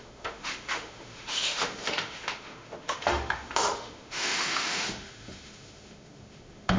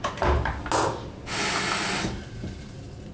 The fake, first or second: first